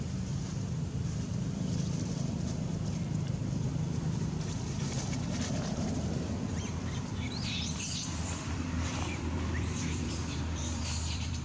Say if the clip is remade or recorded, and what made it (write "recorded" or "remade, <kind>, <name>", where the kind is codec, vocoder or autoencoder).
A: remade, vocoder, BigVGAN v2